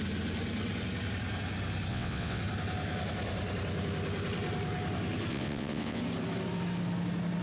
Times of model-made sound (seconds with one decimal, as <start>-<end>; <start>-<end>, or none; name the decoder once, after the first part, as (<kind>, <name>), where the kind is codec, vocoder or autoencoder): 1.9-2.4 (vocoder, WaveNeXt); 5.3-6.0